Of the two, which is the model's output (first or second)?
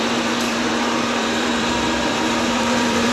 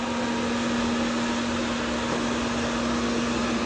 first